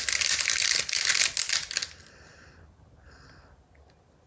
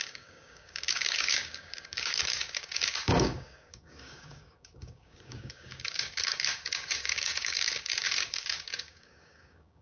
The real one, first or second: first